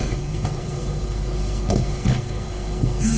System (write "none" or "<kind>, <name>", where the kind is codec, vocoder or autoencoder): codec, SNAC